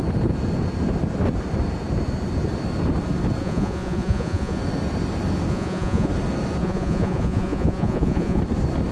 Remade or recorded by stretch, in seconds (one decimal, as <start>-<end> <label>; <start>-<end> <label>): 0.0-3.4 recorded; 3.4-4.6 remade; 4.6-5.5 recorded; 5.5-6.1 remade; 6.1-6.6 recorded; 6.6-8.4 remade; 8.4-8.9 recorded